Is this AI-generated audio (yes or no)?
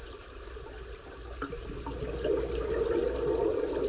no